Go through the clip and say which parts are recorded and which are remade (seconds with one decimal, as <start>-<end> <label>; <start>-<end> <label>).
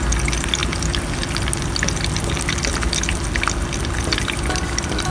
0.0-5.1 recorded